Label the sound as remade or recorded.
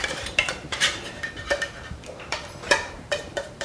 remade